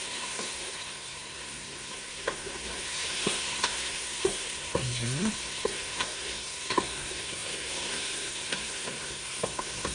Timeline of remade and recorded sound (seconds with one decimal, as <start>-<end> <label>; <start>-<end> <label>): 0.0-9.9 remade